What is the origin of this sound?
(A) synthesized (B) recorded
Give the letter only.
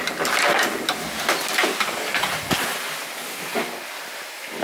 B